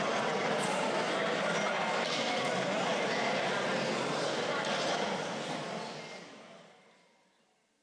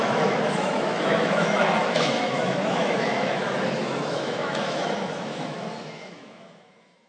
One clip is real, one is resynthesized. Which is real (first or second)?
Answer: first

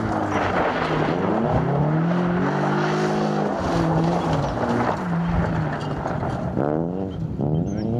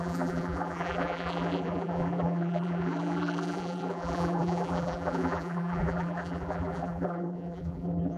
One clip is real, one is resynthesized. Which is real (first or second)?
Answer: first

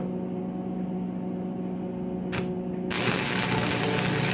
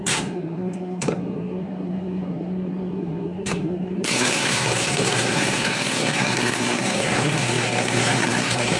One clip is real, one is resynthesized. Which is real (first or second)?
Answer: first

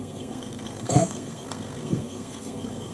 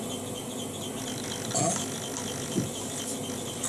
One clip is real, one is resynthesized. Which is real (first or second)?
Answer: second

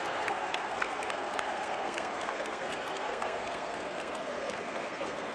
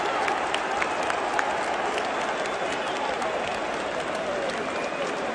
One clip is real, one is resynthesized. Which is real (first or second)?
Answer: second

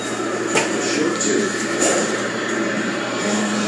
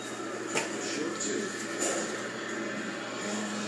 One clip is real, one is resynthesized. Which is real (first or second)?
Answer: second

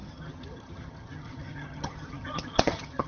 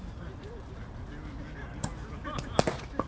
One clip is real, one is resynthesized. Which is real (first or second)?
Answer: second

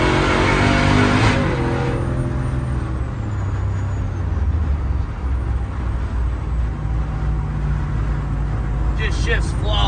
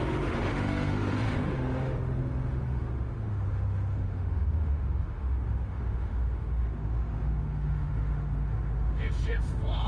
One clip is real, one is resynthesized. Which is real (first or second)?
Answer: first